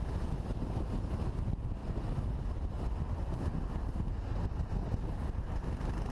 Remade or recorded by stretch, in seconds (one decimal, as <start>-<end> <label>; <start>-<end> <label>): 0.0-6.1 recorded